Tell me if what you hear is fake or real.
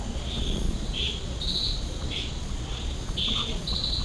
fake